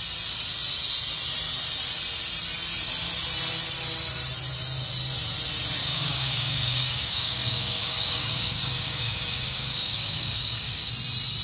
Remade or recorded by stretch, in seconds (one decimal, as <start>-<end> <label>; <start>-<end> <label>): 0.0-5.8 recorded; 5.8-10.9 remade; 10.9-11.4 recorded